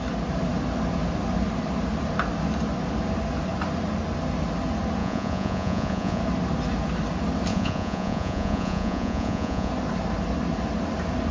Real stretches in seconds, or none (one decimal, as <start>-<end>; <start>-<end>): 0.0-5.0; 6.2-7.5; 9.7-11.3